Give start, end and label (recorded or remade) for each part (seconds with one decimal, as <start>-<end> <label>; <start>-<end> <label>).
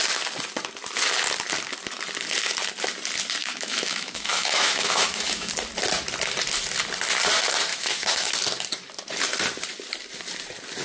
0.0-3.4 recorded; 3.4-5.5 remade; 5.5-7.7 recorded; 7.7-8.3 remade; 8.3-10.8 recorded